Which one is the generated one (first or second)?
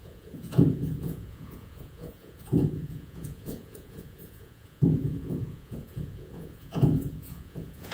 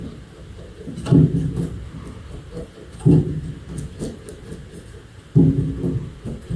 first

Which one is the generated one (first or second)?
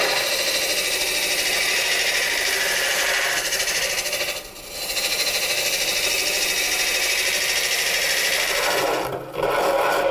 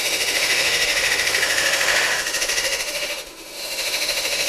second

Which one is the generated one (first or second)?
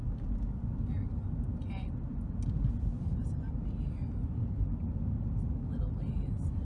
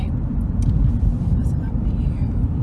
second